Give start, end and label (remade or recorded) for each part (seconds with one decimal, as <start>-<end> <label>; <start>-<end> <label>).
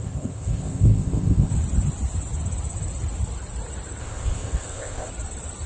0.0-1.5 remade; 1.5-4.0 recorded; 4.0-5.1 remade; 5.1-5.7 recorded